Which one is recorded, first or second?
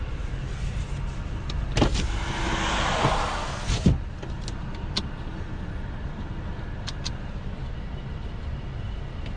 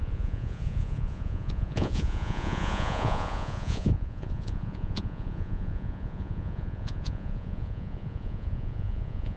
first